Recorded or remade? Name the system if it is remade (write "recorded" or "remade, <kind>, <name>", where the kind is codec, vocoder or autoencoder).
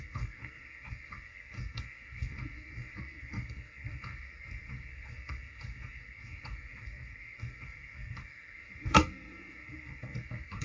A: remade, codec, SNAC